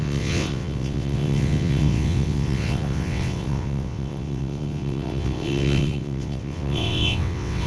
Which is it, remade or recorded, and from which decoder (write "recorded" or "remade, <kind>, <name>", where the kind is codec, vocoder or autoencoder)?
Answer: remade, vocoder, WaveNeXt